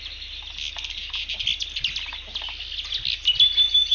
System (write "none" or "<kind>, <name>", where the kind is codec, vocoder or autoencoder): none